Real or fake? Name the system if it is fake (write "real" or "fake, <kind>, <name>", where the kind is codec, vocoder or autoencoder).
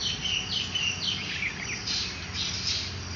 real